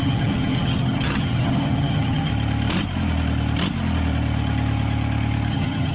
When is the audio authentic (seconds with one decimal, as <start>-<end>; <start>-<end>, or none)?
2.3-5.5